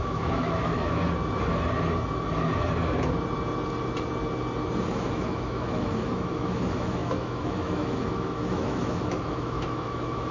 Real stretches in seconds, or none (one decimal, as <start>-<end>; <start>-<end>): 1.0-4.9